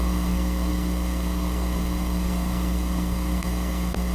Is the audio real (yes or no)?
no